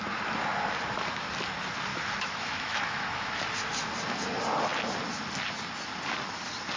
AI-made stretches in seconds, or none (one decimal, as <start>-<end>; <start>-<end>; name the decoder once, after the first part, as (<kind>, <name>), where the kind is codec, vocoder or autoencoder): 1.9-3.4 (autoencoder, DAC-VAE)